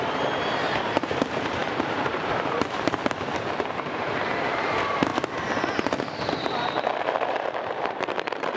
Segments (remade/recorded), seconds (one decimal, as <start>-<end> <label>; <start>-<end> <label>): 0.0-5.1 remade; 5.1-6.2 recorded; 6.2-8.6 remade